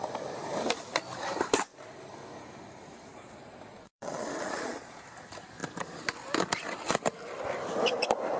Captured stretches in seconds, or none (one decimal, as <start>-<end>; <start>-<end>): 0.0-3.7; 5.0-8.4